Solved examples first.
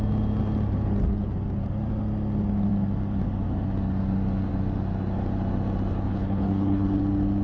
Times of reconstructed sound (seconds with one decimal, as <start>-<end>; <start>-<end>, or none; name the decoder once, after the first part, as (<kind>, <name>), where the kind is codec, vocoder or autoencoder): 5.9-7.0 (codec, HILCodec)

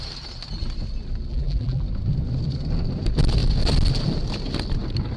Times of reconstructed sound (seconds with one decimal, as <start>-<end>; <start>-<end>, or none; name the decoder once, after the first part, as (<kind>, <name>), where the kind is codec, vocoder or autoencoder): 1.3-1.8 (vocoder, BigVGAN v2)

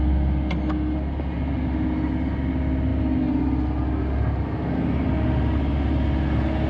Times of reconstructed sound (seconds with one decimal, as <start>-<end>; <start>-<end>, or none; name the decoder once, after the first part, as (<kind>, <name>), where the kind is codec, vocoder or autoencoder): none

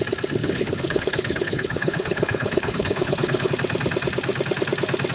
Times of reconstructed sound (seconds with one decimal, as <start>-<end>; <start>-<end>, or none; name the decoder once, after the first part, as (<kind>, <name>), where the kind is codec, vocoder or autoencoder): 0.4-3.5 (codec, HILCodec)